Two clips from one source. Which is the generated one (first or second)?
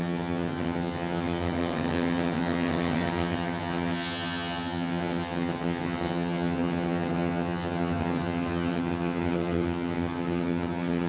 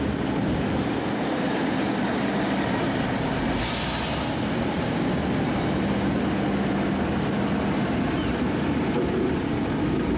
first